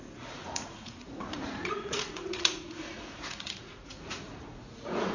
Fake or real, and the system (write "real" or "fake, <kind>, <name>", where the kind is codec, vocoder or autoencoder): fake, vocoder, Vocos